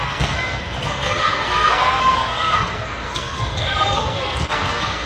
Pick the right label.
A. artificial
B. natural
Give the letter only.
A